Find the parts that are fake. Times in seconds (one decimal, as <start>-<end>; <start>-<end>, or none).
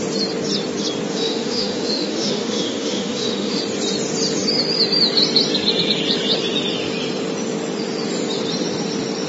1.1-3.6